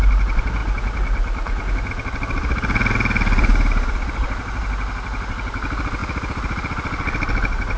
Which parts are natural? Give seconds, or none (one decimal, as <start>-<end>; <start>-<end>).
0.0-7.8